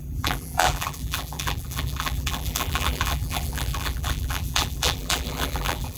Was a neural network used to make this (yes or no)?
yes